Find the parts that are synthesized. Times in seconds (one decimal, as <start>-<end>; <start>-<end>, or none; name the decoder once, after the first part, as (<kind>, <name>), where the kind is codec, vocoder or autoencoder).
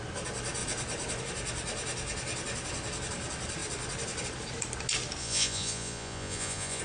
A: 5.2-6.8 (vocoder, Vocos)